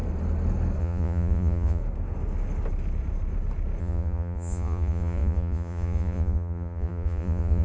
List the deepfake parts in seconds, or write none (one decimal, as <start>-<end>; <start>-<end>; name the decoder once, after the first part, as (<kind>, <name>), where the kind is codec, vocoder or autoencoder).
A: 0.8-1.8 (vocoder, Vocos); 3.8-7.6